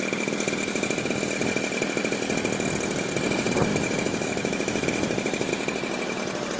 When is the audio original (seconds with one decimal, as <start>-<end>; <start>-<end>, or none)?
0.0-3.7; 5.5-6.6